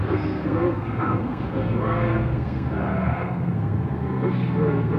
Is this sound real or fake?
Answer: fake